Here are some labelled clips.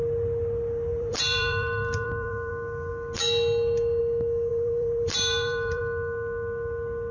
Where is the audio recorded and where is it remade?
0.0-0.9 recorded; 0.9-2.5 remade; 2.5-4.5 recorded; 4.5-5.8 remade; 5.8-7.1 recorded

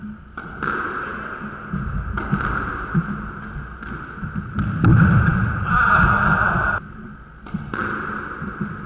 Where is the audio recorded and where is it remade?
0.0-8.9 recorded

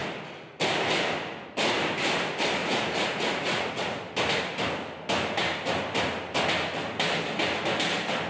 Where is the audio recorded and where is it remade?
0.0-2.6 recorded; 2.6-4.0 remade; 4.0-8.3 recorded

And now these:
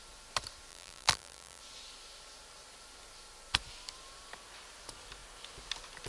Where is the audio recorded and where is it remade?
0.0-0.7 recorded; 0.7-1.6 remade; 1.6-6.1 recorded

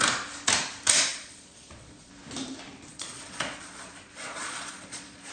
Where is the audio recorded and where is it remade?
0.0-1.1 recorded; 1.1-2.1 remade; 2.1-2.9 recorded; 2.9-5.3 remade

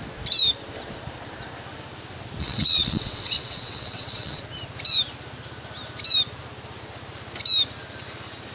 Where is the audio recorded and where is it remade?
0.0-2.4 recorded; 2.4-4.4 remade; 4.4-8.5 recorded